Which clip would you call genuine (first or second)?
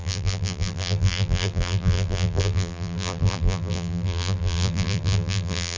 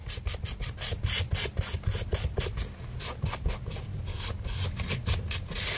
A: second